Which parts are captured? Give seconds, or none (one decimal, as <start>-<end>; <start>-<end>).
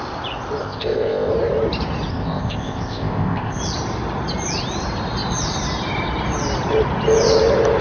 0.0-0.6; 1.3-2.1; 3.6-7.8